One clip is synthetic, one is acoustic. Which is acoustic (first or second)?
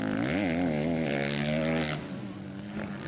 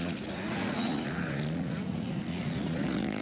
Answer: first